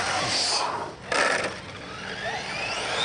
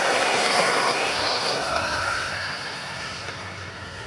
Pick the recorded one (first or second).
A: first